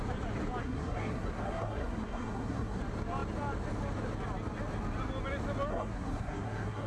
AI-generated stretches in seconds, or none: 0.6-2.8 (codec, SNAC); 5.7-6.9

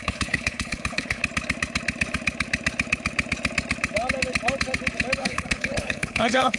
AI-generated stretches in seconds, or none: 0.0-1.2 (codec, HILCodec); 5.2-6.6

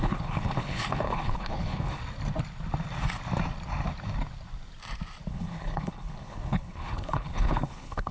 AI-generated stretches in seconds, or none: 0.0-2.0 (codec, HILCodec); 5.3-8.1

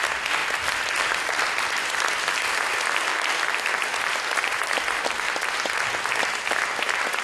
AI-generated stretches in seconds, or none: 0.4-2.1 (vocoder, BigVGAN v2); 3.1-3.7

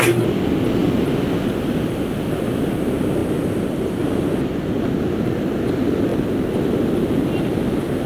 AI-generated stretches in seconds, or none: none

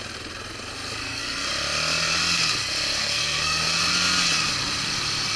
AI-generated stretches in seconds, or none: 1.0-1.5 (codec, SNAC); 3.0-3.8